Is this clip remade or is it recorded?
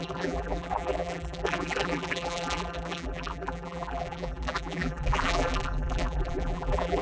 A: remade